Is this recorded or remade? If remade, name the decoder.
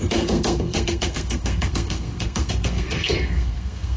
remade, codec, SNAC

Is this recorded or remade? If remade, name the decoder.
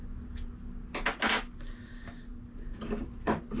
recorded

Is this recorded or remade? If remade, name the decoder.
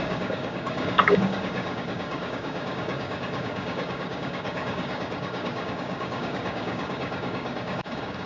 remade, codec, DAC